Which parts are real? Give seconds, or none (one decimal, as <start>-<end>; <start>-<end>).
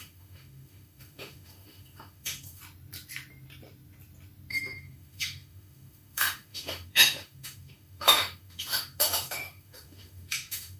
2.6-4.5